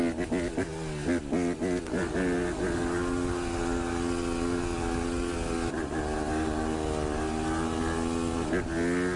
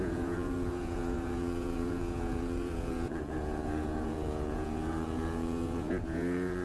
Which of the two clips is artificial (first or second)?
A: second